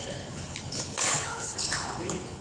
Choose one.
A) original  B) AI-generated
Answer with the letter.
B